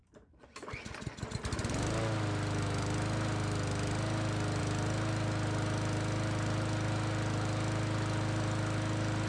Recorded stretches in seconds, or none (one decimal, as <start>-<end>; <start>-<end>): 0.0-9.3